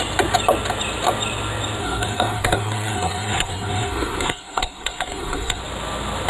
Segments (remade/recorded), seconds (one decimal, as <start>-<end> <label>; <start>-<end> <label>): 0.0-1.8 recorded; 1.8-5.6 remade; 5.6-6.3 recorded